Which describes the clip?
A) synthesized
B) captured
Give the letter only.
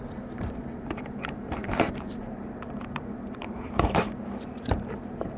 A